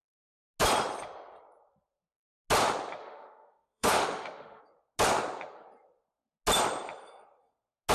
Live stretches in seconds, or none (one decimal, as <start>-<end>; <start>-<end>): 0.0-3.0; 4.6-7.9